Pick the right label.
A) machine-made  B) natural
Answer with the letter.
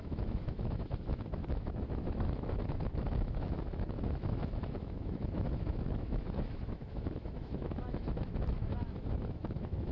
A